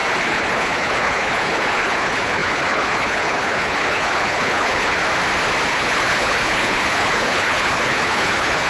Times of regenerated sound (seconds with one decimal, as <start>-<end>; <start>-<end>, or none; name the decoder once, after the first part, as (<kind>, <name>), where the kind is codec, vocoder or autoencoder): 0.0-5.0 (codec, HILCodec); 5.7-8.7